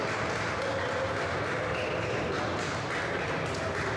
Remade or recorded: recorded